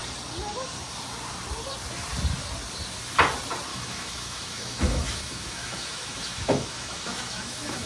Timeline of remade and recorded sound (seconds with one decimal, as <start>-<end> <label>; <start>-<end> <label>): 0.0-3.7 recorded; 3.7-7.9 remade